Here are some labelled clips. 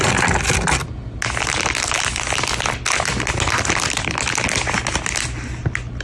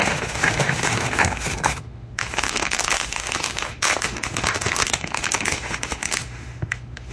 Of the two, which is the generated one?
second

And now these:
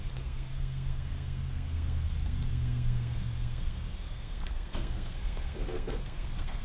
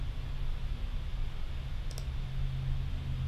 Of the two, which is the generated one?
first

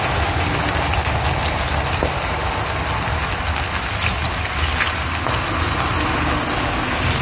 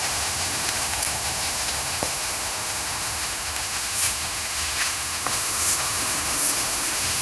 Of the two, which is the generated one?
second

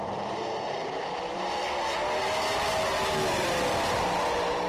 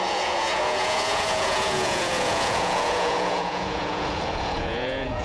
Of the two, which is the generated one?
second